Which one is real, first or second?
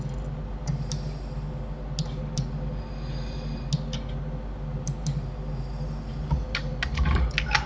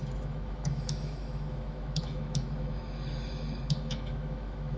first